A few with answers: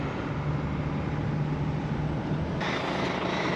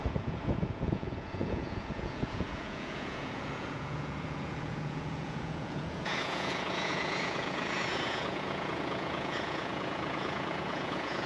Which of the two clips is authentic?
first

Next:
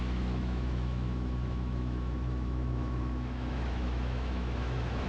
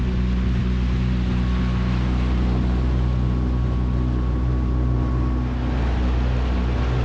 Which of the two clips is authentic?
second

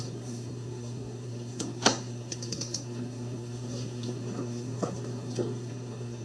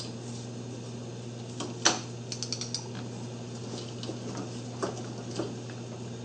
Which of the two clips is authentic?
second